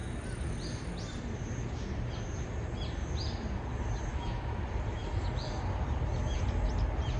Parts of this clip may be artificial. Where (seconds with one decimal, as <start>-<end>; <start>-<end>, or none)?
4.1-4.6